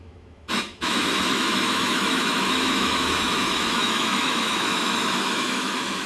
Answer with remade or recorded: remade